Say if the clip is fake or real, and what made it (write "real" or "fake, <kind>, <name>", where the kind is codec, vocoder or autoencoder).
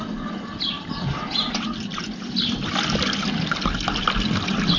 real